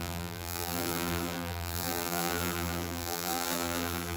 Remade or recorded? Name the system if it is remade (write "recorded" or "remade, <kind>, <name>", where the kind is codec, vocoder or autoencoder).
remade, vocoder, BigVGAN v2